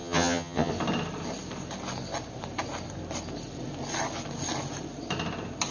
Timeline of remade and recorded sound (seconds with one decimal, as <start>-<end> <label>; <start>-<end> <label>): 0.0-0.7 remade; 0.7-5.7 recorded